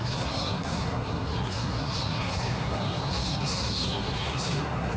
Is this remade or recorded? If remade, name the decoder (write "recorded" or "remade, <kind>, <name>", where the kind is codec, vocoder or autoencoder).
remade, codec, SNAC